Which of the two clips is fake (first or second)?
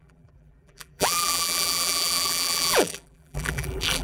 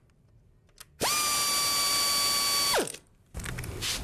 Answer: first